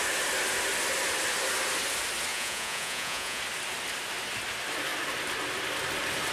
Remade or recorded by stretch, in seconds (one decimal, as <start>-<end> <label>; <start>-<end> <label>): 0.0-2.3 recorded; 2.3-3.4 remade; 3.4-6.3 recorded